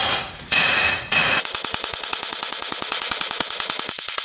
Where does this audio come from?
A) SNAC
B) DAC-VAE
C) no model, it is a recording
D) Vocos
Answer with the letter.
D